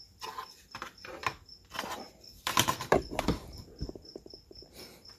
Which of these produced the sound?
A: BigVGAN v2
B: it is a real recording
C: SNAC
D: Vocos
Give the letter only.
B